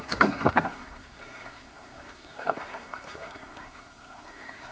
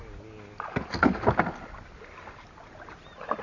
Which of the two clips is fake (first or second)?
first